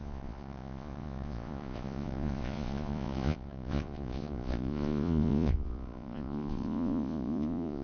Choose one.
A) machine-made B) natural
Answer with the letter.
A